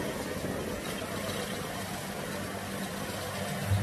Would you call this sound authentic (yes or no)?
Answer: yes